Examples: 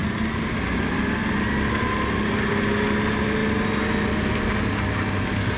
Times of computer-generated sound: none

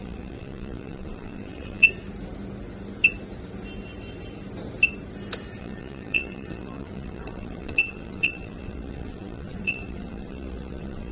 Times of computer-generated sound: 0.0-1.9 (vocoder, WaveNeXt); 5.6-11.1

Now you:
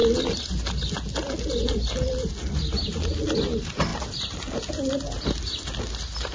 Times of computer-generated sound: none

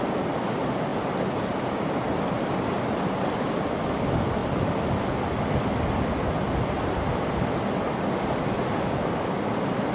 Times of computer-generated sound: none